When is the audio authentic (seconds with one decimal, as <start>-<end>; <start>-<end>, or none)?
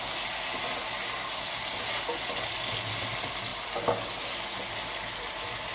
0.0-5.7